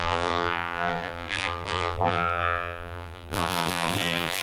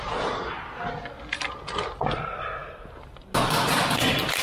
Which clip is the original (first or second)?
second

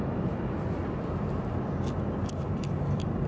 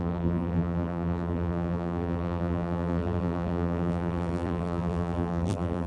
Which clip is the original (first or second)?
first